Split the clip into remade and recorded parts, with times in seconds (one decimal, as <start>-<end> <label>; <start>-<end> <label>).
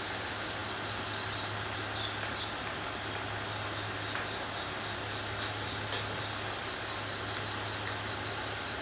0.0-8.8 recorded